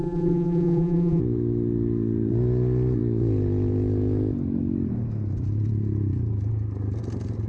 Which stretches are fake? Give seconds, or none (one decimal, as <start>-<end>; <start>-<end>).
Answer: 0.0-1.2